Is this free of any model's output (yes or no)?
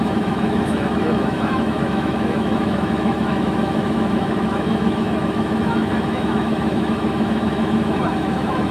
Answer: no